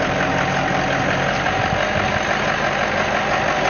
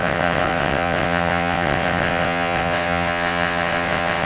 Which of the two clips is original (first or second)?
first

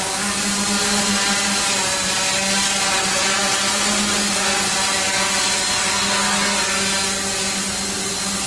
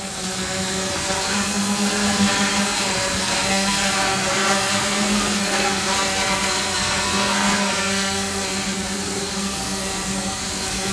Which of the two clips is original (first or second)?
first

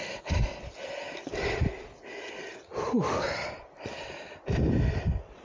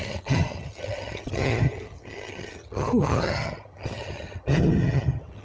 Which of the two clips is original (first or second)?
first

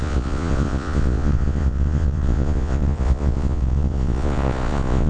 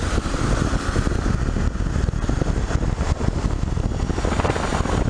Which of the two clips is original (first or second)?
second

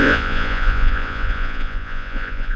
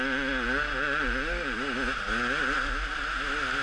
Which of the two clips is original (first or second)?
second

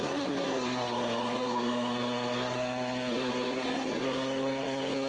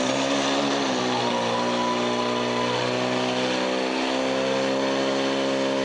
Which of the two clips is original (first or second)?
second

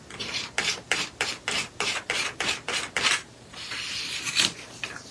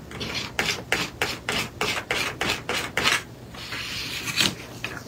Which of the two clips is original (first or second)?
second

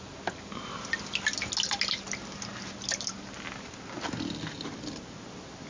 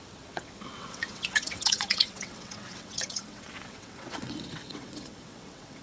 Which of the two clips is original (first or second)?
first